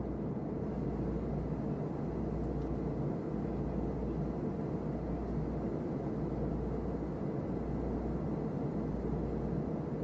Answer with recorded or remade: recorded